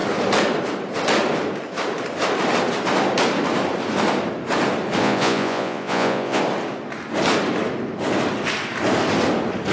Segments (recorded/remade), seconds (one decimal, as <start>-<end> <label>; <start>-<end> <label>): 0.0-5.0 recorded; 5.0-6.4 remade; 6.4-9.7 recorded